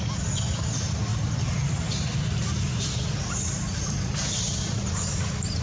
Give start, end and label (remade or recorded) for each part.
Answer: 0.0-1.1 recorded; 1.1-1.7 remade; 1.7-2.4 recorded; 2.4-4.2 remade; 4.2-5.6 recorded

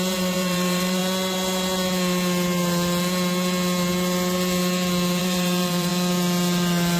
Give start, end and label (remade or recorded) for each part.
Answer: 0.0-1.0 remade; 1.0-5.2 recorded; 5.2-5.9 remade; 5.9-7.0 recorded

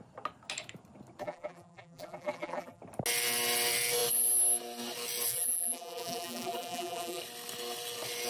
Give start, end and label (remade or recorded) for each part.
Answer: 0.0-1.2 recorded; 1.2-2.8 remade; 2.8-5.3 recorded; 5.3-7.2 remade; 7.2-8.3 recorded